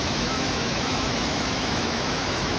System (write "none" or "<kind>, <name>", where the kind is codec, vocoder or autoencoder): autoencoder, DAC-VAE